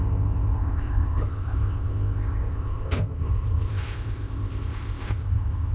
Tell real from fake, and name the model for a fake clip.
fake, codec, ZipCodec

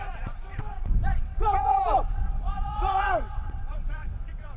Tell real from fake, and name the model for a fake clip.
fake, vocoder, WaveNeXt